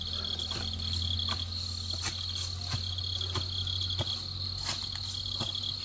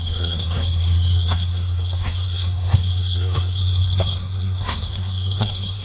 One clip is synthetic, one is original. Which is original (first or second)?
first